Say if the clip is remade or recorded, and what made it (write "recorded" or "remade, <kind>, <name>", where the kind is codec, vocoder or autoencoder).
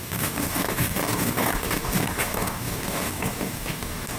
remade, codec, DAC